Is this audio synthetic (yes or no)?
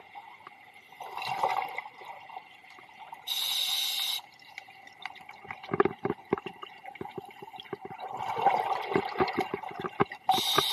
no